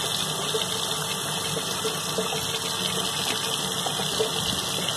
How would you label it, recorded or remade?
recorded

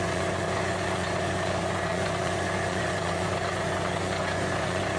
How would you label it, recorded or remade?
remade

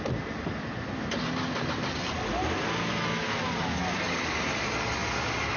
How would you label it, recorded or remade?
recorded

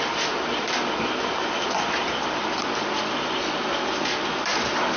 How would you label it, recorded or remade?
recorded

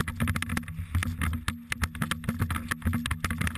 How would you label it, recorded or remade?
recorded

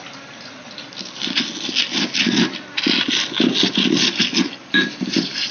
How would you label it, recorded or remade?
recorded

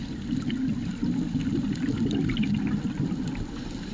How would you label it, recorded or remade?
recorded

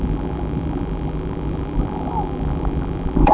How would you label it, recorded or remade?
remade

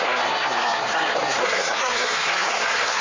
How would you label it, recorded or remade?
remade